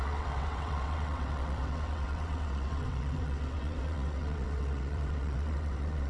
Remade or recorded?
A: remade